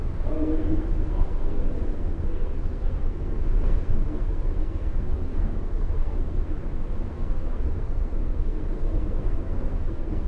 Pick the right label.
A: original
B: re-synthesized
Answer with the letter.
B